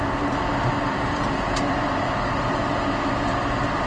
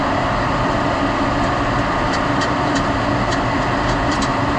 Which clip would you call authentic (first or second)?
first